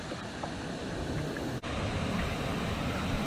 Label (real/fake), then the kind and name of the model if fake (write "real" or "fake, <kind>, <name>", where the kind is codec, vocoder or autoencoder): real